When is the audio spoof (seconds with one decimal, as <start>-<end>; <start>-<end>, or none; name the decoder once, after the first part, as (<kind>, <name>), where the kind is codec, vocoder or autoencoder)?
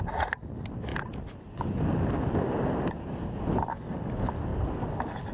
none